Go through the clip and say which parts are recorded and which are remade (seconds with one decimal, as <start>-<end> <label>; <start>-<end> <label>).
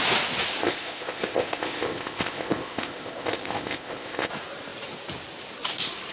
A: 0.0-0.6 recorded; 0.6-4.3 remade; 4.3-6.1 recorded